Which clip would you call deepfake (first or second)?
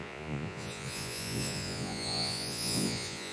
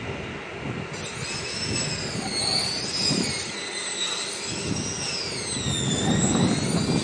first